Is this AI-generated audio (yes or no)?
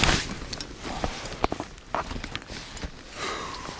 no